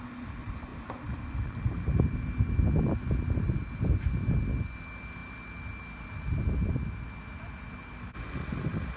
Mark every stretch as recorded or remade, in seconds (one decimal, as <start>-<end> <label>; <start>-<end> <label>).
0.0-9.0 recorded